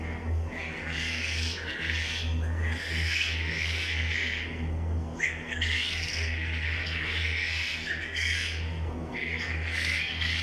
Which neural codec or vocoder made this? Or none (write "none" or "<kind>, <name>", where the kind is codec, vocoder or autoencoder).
codec, SNAC